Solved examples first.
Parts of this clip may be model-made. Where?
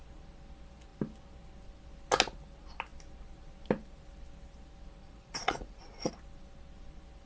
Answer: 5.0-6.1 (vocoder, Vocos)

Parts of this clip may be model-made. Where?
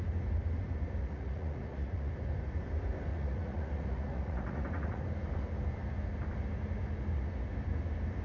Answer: 1.0-2.1 (vocoder, Vocos); 3.1-5.0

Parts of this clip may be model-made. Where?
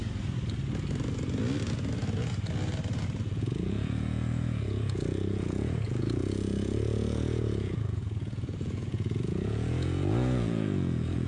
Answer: 3.2-11.3 (vocoder, Vocos)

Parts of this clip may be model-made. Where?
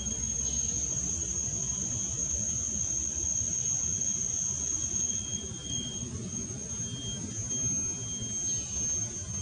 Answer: 2.2-6.7 (vocoder, Vocos)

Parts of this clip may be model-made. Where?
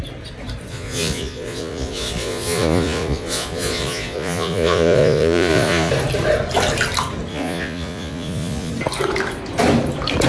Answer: 0.7-5.9 (vocoder, Vocos); 7.3-8.7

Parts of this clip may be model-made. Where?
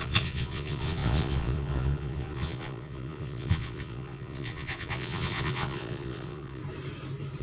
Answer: 0.0-6.6 (vocoder, Vocos)